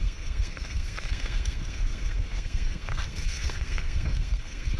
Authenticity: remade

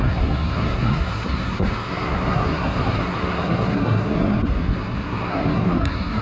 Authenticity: remade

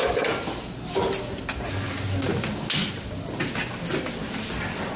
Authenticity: recorded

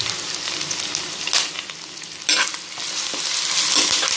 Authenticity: recorded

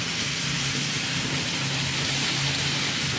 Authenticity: recorded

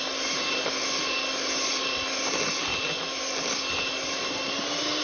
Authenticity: recorded